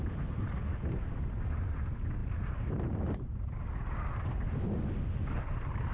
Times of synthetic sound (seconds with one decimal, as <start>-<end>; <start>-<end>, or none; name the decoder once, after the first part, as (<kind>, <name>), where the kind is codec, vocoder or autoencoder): none